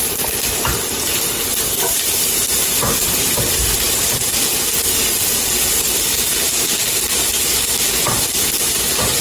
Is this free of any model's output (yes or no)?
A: no